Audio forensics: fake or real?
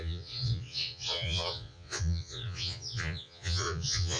fake